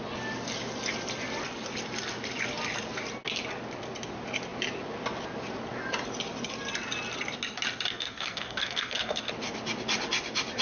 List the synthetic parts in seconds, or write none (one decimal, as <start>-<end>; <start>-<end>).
7.9-9.2